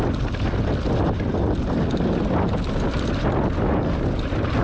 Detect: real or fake real